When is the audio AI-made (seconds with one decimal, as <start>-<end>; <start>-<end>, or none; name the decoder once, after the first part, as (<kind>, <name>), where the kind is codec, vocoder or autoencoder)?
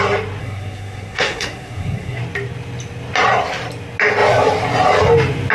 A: 0.4-2.2 (codec, SNAC)